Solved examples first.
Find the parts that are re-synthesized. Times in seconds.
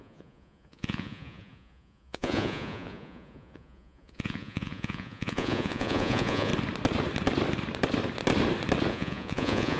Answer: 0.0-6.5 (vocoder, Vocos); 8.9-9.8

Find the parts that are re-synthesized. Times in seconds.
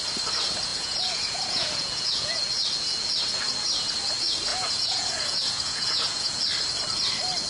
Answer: 0.7-2.4 (vocoder, Vocos); 4.5-6.4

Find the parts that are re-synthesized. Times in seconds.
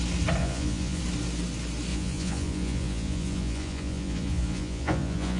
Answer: 0.4-1.0 (vocoder, Vocos); 1.9-5.4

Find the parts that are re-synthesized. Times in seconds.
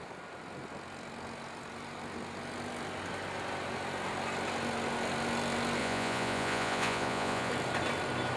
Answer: 5.8-7.5 (vocoder, Vocos)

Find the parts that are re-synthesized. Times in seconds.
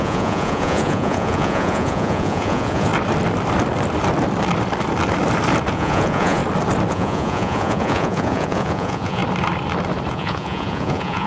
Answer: 0.0-2.9 (vocoder, Vocos); 5.7-6.4; 6.9-9.2; 10.1-11.3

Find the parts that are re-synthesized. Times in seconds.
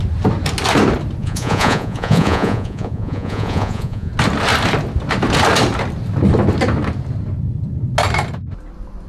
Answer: 1.2-4.1 (vocoder, Vocos)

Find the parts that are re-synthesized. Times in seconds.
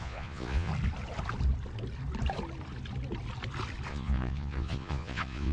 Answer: 0.0-0.7 (vocoder, Vocos); 3.9-5.5